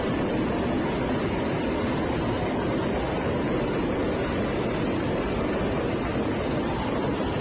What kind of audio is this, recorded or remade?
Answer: recorded